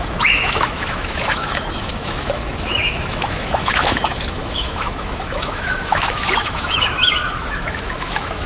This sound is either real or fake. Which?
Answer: fake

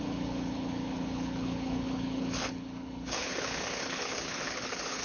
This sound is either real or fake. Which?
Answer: fake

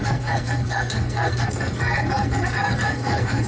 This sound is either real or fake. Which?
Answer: fake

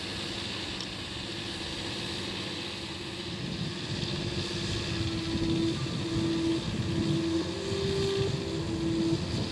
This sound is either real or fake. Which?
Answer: real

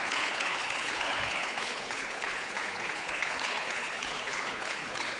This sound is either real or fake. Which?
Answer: fake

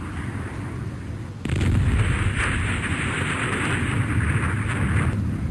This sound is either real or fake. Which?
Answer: real